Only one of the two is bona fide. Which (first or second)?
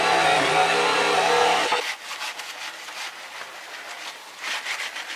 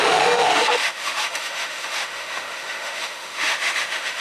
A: first